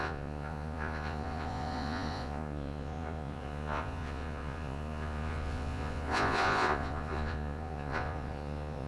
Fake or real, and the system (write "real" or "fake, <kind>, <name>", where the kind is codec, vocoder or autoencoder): fake, vocoder, Vocos